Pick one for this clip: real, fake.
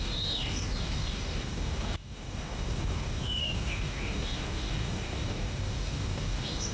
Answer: fake